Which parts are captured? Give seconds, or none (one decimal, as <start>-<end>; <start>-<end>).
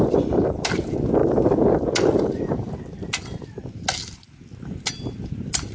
0.0-5.7